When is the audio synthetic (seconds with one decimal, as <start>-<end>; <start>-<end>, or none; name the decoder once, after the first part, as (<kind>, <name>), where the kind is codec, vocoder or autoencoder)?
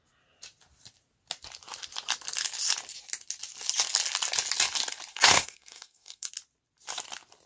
5.1-6.3 (codec, SNAC)